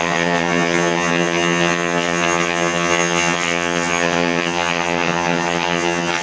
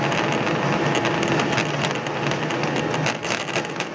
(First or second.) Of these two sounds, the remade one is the first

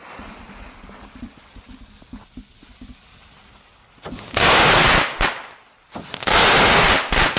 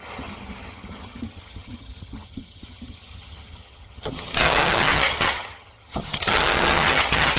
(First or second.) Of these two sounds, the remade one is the second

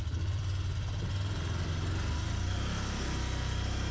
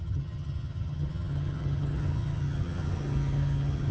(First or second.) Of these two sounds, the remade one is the second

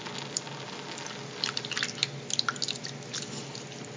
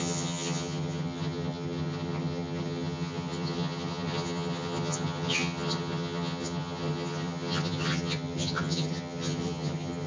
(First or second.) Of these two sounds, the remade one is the second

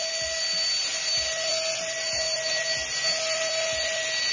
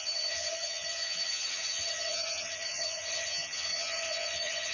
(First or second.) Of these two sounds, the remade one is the second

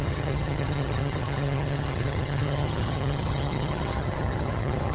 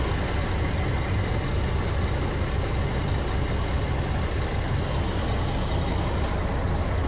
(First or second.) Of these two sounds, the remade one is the first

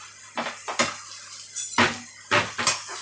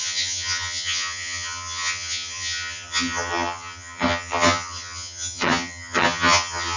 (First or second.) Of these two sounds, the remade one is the second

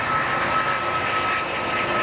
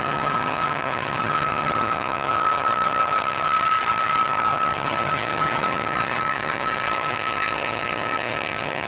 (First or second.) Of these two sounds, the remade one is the second